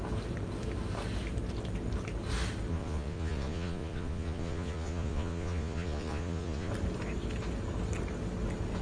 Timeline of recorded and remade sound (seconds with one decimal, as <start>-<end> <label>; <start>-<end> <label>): 0.0-2.7 recorded; 2.7-6.7 remade; 6.7-8.8 recorded